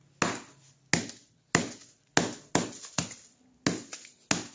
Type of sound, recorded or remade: recorded